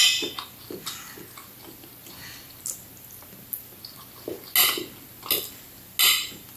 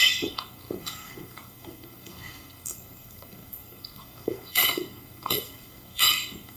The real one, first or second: first